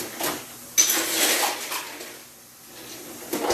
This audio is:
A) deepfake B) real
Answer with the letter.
B